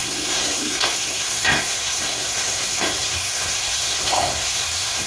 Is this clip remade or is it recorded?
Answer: remade